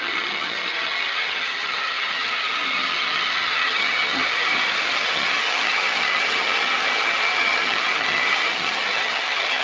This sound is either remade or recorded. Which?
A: remade